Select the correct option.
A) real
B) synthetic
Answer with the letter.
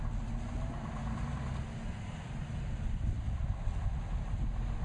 A